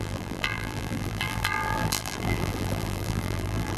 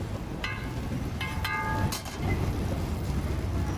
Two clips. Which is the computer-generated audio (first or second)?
first